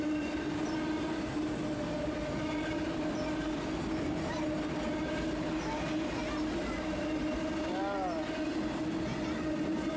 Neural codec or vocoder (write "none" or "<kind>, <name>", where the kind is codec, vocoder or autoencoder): none